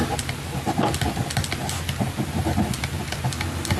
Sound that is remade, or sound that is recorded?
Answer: recorded